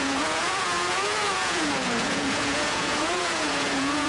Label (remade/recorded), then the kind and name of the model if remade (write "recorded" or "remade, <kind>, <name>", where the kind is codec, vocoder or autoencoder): remade, vocoder, Vocos